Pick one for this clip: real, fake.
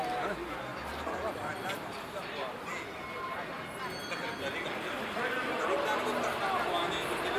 real